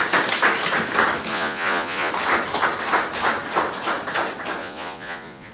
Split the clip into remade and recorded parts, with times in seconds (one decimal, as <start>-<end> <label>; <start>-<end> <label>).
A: 0.0-1.3 recorded; 1.3-2.1 remade; 2.1-4.6 recorded; 4.6-5.5 remade